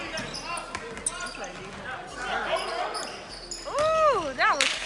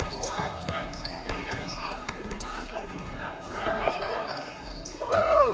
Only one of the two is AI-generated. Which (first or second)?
second